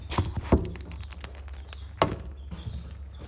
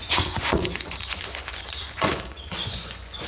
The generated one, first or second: second